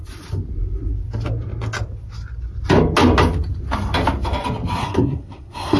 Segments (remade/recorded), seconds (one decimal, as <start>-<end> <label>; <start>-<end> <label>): 0.0-4.8 recorded; 4.8-5.8 remade